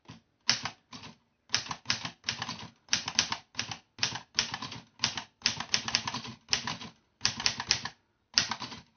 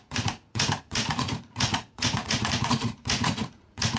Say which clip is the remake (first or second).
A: second